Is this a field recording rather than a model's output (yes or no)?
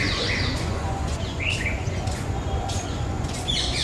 no